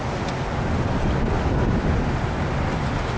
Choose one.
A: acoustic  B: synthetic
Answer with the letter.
A